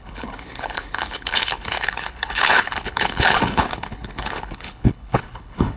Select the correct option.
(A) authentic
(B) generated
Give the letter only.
B